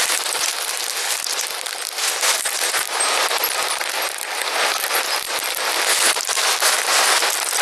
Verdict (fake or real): real